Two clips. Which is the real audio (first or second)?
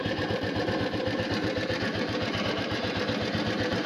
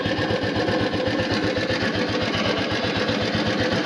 second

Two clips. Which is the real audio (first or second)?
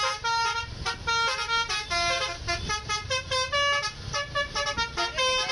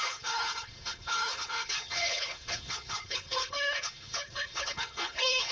first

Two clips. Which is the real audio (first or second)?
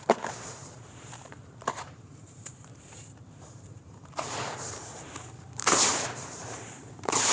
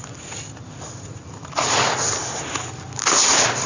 second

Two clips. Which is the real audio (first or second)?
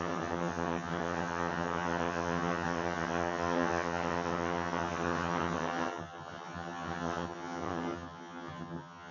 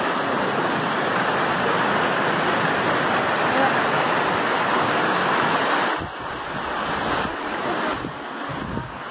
second